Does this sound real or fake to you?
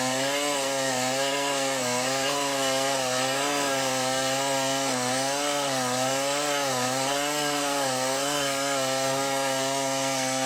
fake